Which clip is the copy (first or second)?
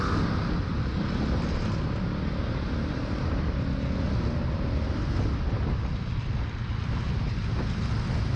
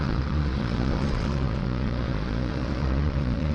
second